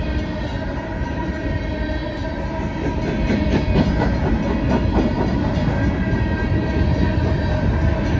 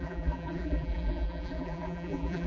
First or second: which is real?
first